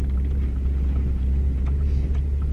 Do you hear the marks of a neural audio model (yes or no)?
no